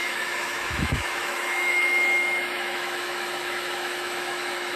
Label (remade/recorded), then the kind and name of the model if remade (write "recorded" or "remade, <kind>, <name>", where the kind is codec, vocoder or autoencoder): remade, autoencoder, DAC-VAE